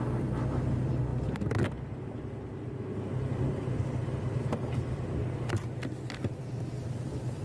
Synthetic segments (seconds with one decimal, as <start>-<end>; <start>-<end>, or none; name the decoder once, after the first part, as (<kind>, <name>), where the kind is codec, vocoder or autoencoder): none